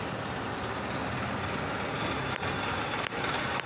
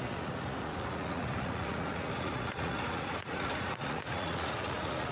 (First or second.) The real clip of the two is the first